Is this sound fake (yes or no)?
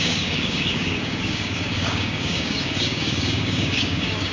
yes